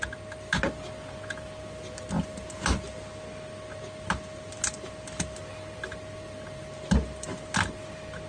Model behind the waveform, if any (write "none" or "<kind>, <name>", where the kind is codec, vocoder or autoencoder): none